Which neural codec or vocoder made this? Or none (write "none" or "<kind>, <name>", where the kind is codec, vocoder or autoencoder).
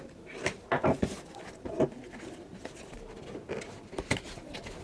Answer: none